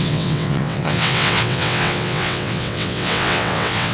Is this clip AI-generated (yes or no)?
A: yes